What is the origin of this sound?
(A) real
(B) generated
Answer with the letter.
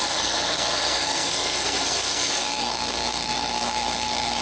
B